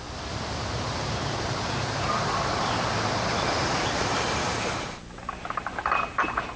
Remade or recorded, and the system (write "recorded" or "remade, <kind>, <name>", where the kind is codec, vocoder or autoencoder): remade, vocoder, BigVGAN v2